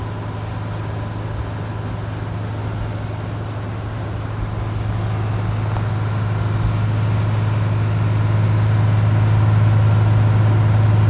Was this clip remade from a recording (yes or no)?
no